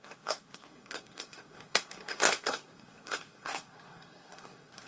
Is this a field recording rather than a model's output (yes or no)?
no